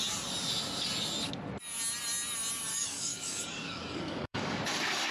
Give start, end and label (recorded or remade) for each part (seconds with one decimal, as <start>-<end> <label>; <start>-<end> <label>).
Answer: 0.0-2.7 recorded; 2.7-4.6 remade; 4.6-5.1 recorded

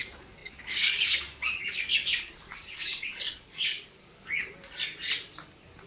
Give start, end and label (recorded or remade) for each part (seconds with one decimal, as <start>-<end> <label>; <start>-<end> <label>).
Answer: 0.0-4.4 remade; 4.4-5.9 recorded

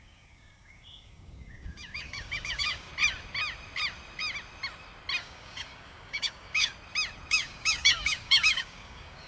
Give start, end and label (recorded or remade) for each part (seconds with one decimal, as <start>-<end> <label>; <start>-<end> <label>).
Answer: 0.0-2.9 remade; 2.9-5.2 recorded; 5.2-6.7 remade; 6.7-7.3 recorded; 7.3-9.3 remade

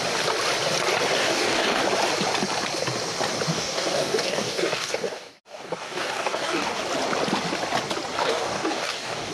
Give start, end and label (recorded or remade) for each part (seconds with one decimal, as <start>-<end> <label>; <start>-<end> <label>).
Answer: 0.0-1.2 recorded; 1.2-1.8 remade; 1.8-3.5 recorded; 3.5-6.8 remade; 6.8-8.2 recorded; 8.2-9.3 remade

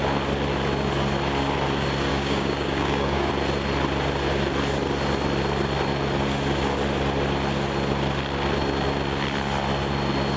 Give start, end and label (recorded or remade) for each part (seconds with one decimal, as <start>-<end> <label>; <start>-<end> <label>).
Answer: 0.0-2.1 recorded; 2.1-3.3 remade; 3.3-10.4 recorded

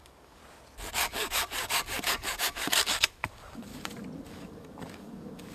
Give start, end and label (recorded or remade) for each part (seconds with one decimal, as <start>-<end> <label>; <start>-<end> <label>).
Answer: 0.0-0.4 remade; 0.4-0.9 recorded; 0.9-3.7 remade; 3.7-4.2 recorded; 4.2-5.5 remade